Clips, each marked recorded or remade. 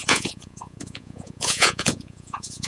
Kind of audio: remade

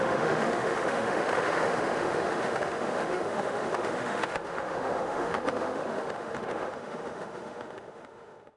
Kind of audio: remade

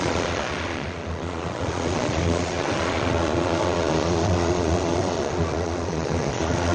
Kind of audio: remade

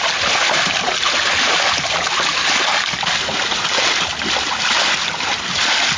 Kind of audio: recorded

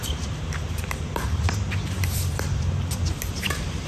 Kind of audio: remade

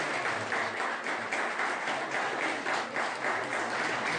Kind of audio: recorded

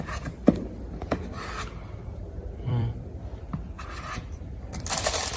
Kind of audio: remade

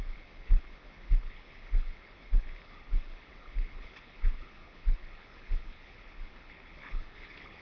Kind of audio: remade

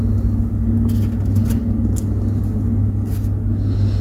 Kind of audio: recorded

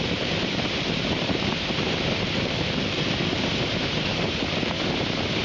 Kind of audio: remade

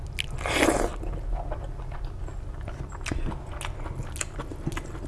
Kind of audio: recorded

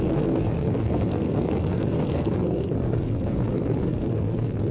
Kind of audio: remade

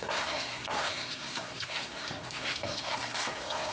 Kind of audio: remade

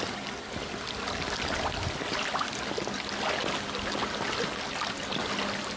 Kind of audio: recorded